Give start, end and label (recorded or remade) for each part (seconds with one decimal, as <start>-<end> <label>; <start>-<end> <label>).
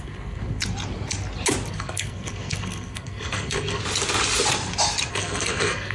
0.0-0.6 remade; 0.6-1.7 recorded; 1.7-3.8 remade; 3.8-5.1 recorded; 5.1-5.9 remade